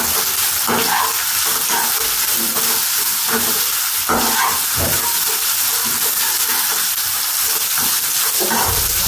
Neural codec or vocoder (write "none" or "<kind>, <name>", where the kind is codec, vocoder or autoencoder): none